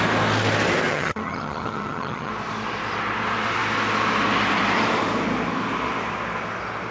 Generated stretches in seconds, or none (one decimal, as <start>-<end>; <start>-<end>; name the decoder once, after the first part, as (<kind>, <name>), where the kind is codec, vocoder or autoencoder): 0.9-2.3 (vocoder, HiFi-GAN)